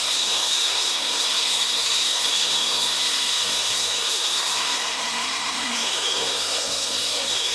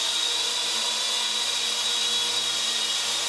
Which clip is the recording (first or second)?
second